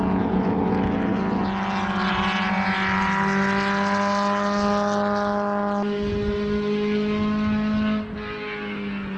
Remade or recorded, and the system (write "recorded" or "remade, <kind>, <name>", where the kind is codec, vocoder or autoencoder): recorded